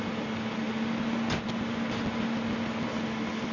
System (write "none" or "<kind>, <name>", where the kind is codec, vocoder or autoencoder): none